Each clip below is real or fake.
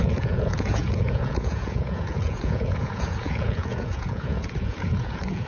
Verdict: fake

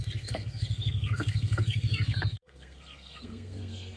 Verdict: fake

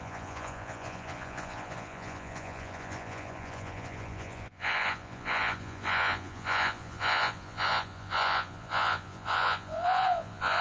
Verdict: fake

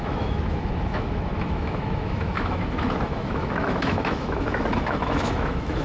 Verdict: fake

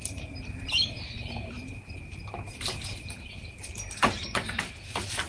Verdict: fake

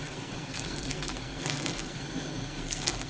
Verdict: fake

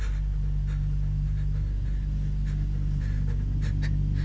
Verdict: real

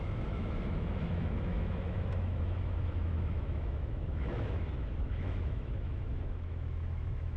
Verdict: fake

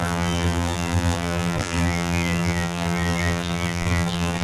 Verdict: fake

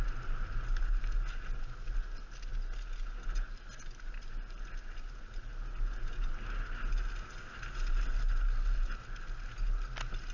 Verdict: real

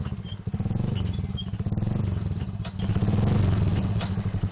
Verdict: real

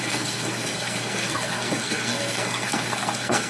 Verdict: fake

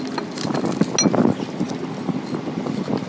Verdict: real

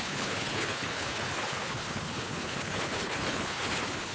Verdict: fake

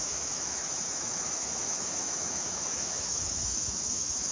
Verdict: fake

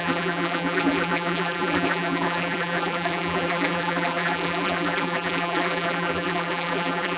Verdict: fake